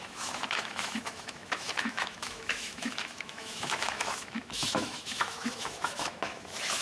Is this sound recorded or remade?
remade